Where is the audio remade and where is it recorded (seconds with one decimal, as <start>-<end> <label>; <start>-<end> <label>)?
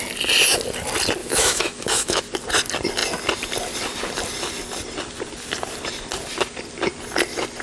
0.0-1.2 recorded; 1.2-2.2 remade; 2.2-7.6 recorded